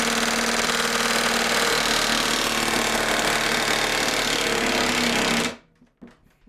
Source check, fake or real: real